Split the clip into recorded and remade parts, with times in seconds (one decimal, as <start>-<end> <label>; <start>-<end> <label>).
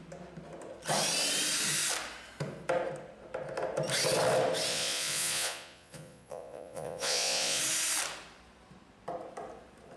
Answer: 0.0-4.7 recorded; 4.7-7.6 remade; 7.6-10.0 recorded